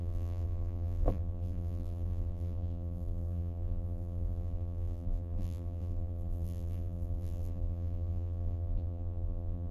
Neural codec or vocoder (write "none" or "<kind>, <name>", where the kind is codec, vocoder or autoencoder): vocoder, BigVGAN v2